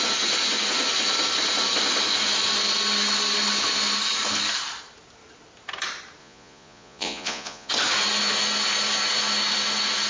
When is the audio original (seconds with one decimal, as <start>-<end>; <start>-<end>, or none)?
0.0-6.2; 7.7-10.1